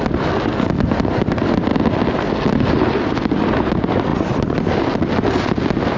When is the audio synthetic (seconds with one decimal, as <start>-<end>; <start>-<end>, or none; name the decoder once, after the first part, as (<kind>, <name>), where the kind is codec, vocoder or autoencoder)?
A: none